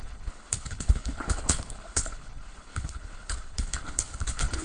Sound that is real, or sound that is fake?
fake